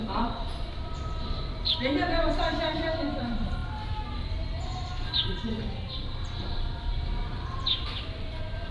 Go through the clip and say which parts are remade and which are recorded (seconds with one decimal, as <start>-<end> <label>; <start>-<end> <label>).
0.0-8.7 remade